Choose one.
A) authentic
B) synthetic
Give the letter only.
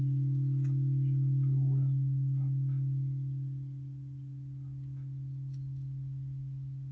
A